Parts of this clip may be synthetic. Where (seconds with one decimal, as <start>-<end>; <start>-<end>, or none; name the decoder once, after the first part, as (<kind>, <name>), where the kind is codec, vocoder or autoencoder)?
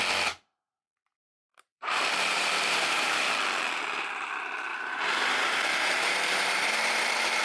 1.5-3.3 (vocoder, BigVGAN v2); 4.7-7.4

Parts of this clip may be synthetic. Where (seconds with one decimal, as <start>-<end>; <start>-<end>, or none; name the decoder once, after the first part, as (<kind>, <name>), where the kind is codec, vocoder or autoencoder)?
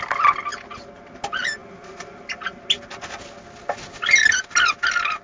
none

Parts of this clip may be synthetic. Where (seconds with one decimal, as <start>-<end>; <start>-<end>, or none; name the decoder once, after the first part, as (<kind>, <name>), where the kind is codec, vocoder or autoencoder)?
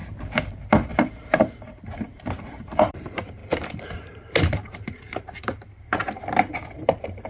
0.5-2.1 (vocoder, BigVGAN v2); 2.9-7.3